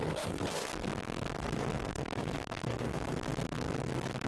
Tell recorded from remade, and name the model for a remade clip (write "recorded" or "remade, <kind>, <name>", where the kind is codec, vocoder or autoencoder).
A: remade, codec, SNAC